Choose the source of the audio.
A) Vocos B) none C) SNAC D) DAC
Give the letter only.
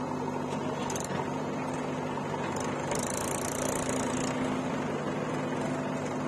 B